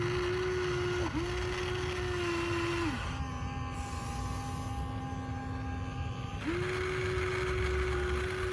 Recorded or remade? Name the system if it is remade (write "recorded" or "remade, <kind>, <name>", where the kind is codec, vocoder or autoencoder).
recorded